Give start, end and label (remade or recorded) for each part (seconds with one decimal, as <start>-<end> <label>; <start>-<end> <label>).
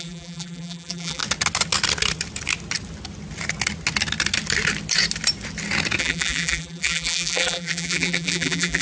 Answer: 0.0-1.2 remade; 1.2-6.0 recorded; 6.0-8.8 remade